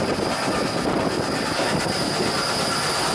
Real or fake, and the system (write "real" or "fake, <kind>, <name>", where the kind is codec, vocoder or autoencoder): real